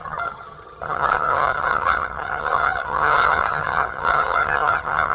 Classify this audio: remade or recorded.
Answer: remade